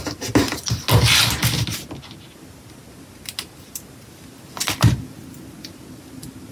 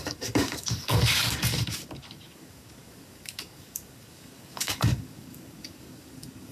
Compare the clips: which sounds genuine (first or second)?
first